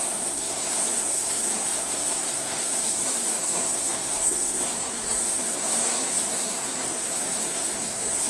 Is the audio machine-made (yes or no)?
yes